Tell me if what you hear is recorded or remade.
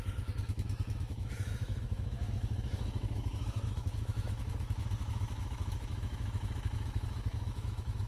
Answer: remade